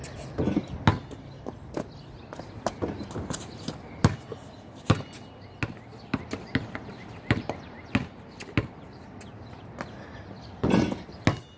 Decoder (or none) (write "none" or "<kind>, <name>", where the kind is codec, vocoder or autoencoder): none